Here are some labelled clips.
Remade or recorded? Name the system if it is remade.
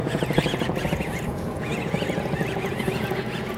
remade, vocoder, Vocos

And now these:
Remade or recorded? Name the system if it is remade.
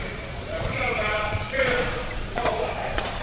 remade, vocoder, Vocos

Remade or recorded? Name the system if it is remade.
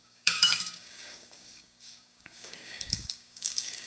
remade, codec, DAC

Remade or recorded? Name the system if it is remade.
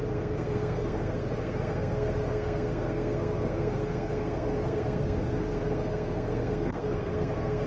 remade, codec, SNAC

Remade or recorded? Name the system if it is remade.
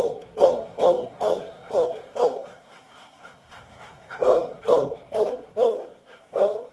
remade, codec, SNAC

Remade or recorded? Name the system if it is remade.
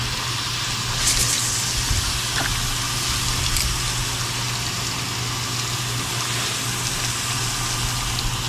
recorded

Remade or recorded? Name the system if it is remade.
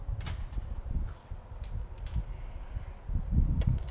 recorded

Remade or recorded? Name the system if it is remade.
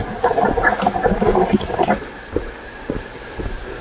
recorded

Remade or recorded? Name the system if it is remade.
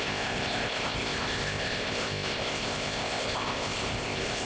remade, codec, ZipCodec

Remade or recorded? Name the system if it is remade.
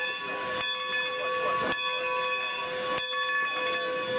recorded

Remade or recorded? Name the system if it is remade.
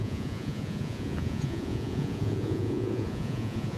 remade, vocoder, Vocos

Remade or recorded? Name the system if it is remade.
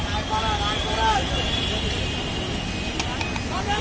recorded